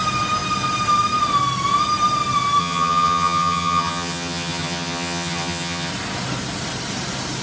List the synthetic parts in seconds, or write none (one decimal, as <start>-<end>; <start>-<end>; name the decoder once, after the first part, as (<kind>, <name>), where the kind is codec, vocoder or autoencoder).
2.6-5.9 (vocoder, HiFi-GAN)